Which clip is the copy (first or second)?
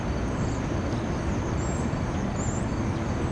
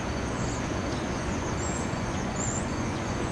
second